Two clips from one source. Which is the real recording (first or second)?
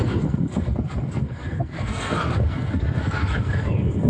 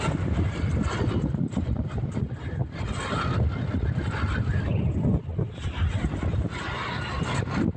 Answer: second